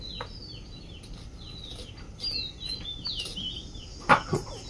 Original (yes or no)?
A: yes